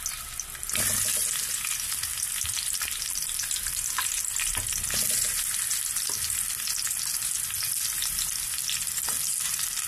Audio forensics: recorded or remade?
recorded